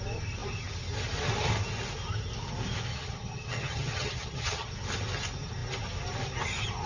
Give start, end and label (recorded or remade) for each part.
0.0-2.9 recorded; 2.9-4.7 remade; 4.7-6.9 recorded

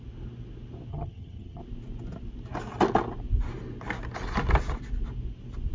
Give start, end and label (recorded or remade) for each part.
0.0-0.9 recorded; 0.9-1.6 remade; 1.6-5.7 recorded